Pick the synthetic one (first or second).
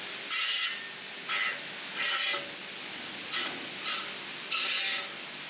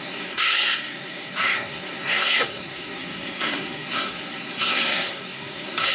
second